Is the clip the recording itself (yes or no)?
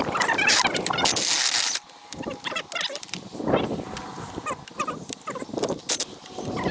yes